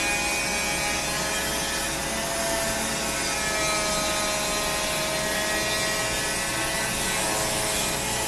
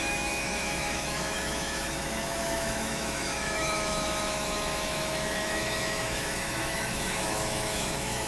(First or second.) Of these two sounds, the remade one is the second